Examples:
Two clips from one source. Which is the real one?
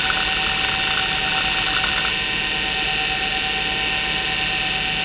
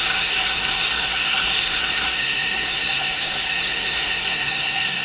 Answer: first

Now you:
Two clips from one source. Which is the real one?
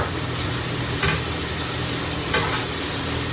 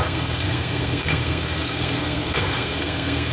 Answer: first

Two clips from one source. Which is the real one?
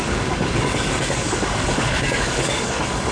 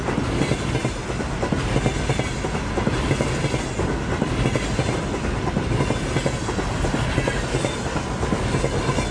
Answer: second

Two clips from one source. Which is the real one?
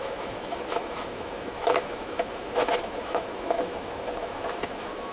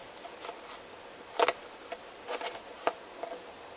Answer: second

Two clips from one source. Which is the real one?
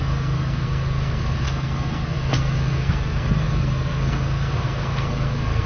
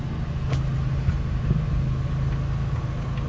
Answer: second